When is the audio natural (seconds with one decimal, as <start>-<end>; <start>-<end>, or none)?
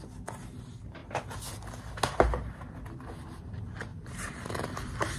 0.0-3.9